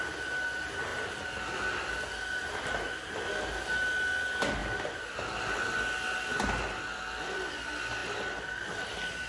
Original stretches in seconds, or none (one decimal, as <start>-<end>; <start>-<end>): 0.0-9.3